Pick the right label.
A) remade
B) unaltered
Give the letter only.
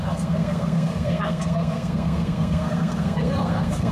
A